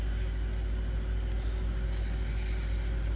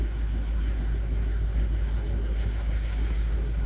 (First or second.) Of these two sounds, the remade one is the second